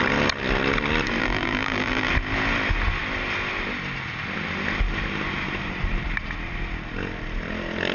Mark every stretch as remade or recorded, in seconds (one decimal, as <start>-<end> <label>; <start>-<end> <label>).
0.0-1.2 recorded; 1.2-2.1 remade; 2.1-7.9 recorded

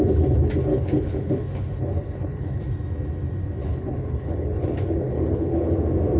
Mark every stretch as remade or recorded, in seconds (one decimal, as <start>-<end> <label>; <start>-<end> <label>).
0.0-0.7 recorded; 0.7-2.6 remade; 2.6-3.6 recorded; 3.6-5.7 remade; 5.7-6.2 recorded

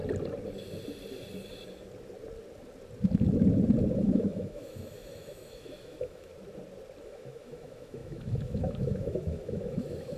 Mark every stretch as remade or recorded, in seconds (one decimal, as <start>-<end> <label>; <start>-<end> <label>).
0.0-4.0 recorded; 4.0-6.3 remade; 6.3-7.0 recorded; 7.0-10.2 remade

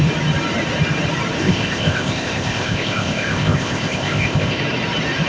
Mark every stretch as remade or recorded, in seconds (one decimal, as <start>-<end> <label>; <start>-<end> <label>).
0.0-1.4 recorded; 1.4-4.6 remade; 4.6-5.3 recorded